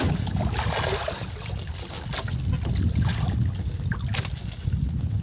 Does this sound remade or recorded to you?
recorded